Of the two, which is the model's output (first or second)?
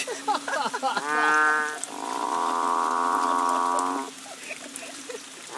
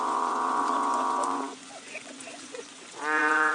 second